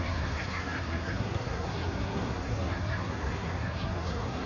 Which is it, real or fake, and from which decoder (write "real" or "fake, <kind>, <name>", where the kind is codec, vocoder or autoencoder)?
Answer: fake, codec, SNAC